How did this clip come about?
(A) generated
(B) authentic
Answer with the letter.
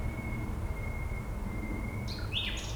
B